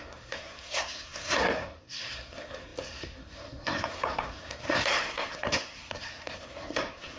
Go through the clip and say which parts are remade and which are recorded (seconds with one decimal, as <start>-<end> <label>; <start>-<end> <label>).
0.0-7.2 remade